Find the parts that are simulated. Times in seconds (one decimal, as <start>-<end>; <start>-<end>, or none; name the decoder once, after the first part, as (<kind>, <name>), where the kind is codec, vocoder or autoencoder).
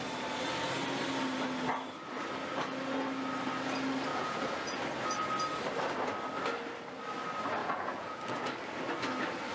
4.1-4.8 (vocoder, Vocos); 7.6-8.5